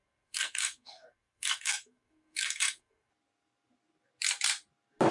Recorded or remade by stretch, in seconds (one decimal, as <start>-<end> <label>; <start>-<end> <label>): 0.0-3.1 remade; 3.1-5.1 recorded